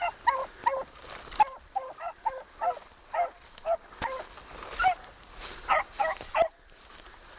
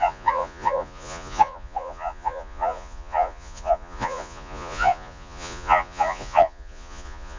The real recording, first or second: first